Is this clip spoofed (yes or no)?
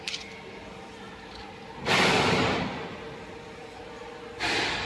no